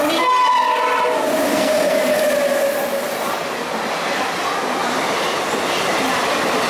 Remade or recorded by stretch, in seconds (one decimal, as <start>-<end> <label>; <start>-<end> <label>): 0.0-1.5 recorded; 1.5-2.2 remade; 2.2-6.7 recorded